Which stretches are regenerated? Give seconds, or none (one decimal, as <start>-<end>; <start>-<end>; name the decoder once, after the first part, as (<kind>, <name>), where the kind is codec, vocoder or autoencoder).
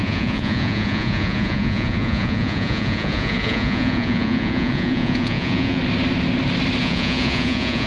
0.0-5.8 (vocoder, Vocos); 6.8-7.9